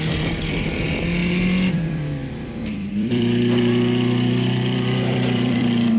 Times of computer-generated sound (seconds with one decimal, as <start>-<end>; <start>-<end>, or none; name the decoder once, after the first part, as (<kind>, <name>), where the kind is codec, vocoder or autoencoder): 0.0-1.2 (vocoder, BigVGAN v2); 1.7-6.0